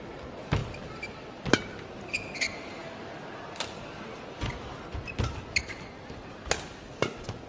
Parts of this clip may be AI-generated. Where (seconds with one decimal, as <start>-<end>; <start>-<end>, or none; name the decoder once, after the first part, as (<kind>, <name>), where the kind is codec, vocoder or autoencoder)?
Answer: none